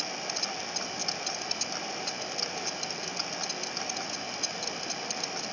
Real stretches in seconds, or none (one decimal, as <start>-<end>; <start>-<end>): 0.0-5.5